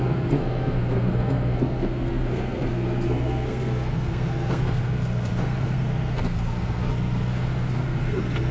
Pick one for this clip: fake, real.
fake